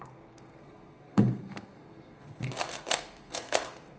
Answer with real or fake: fake